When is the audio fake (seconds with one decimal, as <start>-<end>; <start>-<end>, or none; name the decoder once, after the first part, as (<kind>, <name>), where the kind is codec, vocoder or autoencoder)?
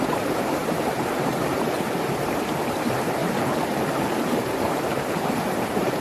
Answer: 0.0-6.0 (vocoder, BigVGAN v2)